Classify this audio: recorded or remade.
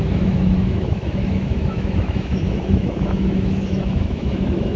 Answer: remade